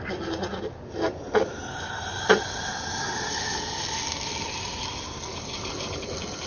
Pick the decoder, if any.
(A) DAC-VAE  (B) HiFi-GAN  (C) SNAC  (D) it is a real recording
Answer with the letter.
D